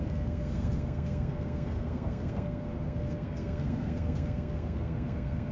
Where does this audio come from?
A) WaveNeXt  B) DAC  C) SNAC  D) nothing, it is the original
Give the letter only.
C